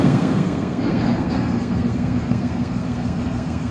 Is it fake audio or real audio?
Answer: fake